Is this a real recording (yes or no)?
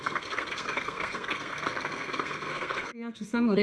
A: no